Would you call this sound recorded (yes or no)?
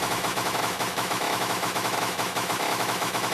no